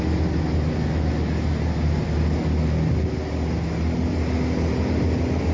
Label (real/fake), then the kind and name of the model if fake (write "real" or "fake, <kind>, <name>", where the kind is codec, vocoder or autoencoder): real